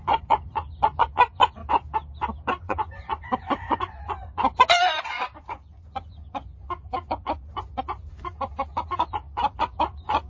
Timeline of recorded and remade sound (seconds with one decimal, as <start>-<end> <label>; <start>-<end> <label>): 0.0-1.6 remade; 1.6-2.6 recorded; 2.6-10.3 remade